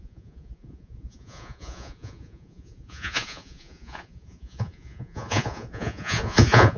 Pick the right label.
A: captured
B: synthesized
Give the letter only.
B